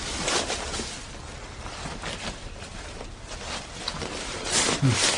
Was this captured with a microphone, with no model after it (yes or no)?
yes